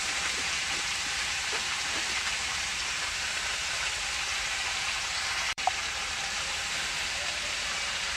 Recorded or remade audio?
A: remade